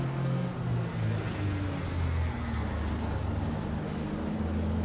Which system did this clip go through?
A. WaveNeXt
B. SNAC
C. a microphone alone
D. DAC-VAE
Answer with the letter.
C